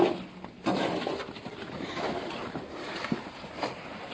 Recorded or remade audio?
recorded